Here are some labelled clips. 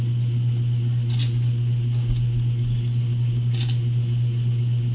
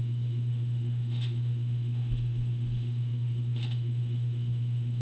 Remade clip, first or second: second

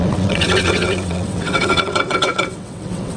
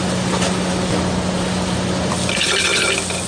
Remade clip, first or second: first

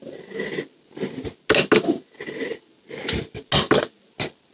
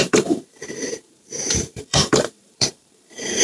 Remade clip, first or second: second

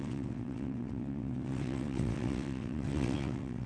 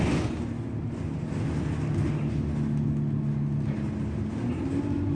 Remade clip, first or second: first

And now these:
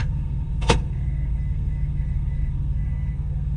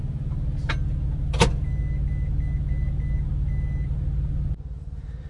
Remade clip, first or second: first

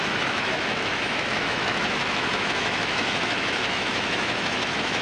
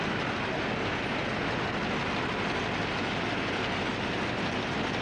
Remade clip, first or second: first